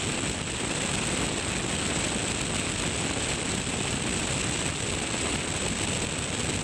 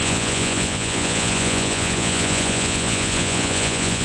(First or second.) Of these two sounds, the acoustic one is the first